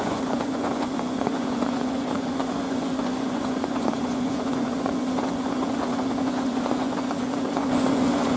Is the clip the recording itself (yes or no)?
no